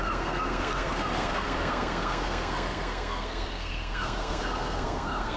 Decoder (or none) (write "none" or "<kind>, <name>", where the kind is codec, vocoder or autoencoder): codec, SNAC